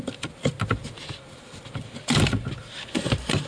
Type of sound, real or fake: real